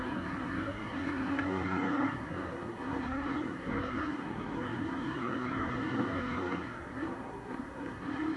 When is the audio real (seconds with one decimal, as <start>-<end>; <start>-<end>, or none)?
none